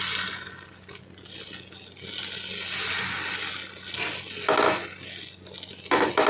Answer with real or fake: real